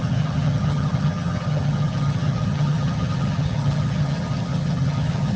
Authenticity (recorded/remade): remade